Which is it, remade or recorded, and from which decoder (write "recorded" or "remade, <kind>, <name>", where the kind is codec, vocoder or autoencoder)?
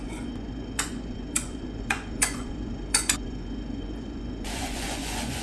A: remade, vocoder, Vocos